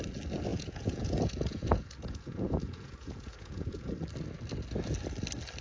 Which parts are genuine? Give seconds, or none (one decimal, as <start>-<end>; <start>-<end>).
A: 0.0-0.5; 3.9-5.6